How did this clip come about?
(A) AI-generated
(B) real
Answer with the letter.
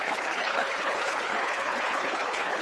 A